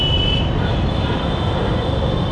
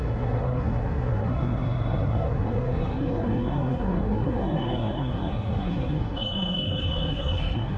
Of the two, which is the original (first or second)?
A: first